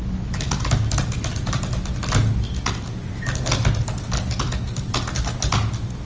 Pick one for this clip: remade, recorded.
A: recorded